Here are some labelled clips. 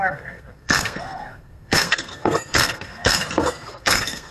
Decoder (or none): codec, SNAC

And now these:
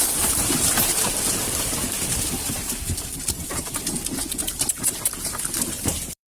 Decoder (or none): vocoder, BigVGAN v2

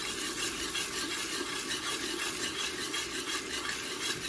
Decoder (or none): none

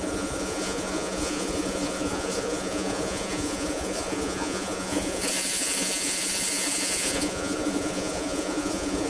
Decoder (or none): vocoder, Vocos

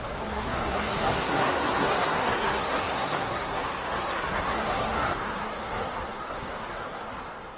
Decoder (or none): codec, SNAC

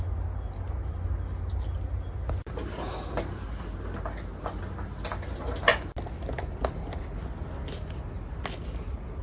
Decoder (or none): none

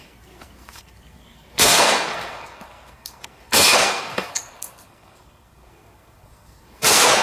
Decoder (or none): codec, SNAC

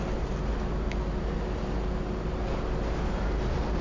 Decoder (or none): none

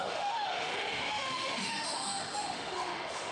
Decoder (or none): autoencoder, DAC-VAE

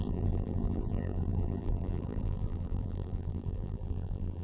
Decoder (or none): vocoder, BigVGAN v2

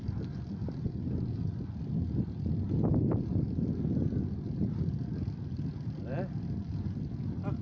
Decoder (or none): none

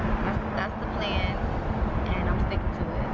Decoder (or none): none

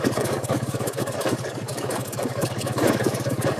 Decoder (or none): codec, DAC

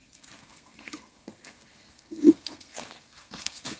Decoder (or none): codec, SNAC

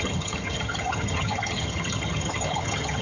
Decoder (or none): vocoder, HiFi-GAN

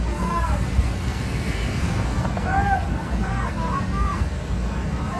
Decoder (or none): codec, SNAC